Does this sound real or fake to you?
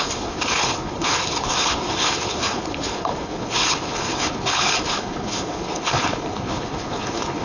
fake